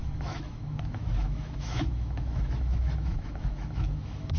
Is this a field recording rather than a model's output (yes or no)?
no